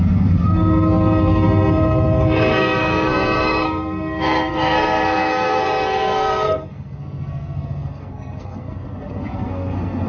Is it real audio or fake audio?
fake